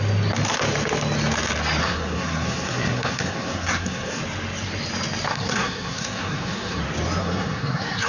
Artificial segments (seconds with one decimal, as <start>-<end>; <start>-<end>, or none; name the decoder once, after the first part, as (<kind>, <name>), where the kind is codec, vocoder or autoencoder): 1.8-4.2 (codec, SNAC); 5.3-6.8; 7.2-8.1